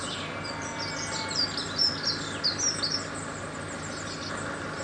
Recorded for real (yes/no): yes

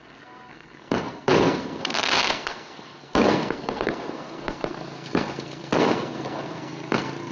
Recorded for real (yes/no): no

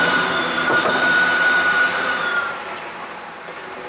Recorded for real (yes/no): no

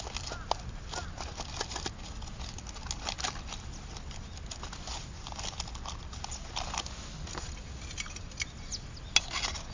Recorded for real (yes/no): yes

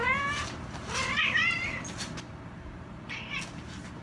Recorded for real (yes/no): yes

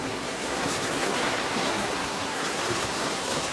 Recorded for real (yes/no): no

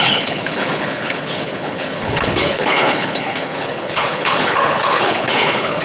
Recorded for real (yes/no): no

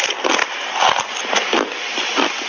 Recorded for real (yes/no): yes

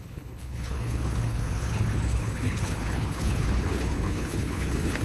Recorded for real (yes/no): no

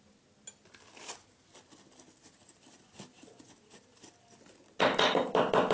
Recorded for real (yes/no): yes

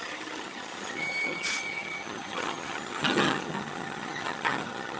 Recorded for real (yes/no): no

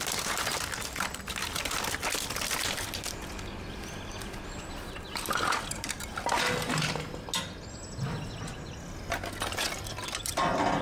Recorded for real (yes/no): yes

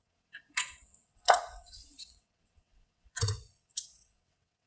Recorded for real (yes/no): no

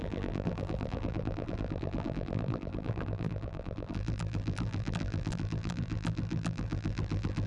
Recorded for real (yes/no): no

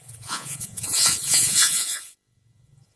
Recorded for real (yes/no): no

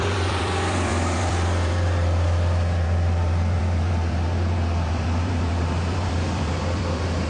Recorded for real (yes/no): no